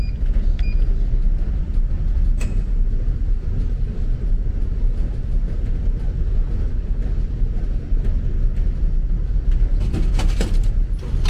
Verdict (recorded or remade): recorded